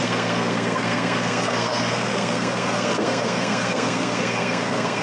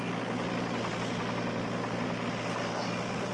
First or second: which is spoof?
first